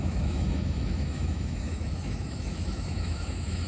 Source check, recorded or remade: remade